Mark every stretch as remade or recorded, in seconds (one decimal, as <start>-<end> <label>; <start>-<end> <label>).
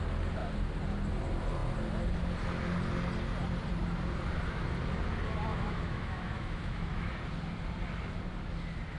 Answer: 0.0-5.5 recorded; 5.5-7.1 remade; 7.1-9.0 recorded